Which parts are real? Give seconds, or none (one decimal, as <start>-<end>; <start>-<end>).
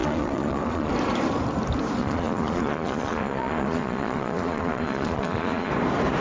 0.9-2.0; 5.7-6.2